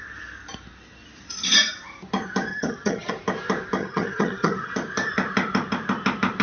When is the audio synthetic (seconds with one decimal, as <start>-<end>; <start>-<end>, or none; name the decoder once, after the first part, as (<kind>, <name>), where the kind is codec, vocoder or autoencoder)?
2.5-3.1 (vocoder, HiFi-GAN); 3.8-4.7